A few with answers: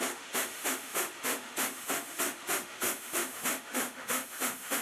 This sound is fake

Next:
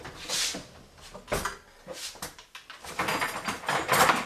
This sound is real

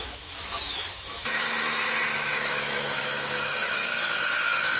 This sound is fake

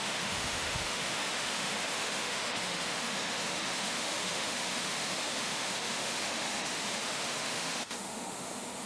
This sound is fake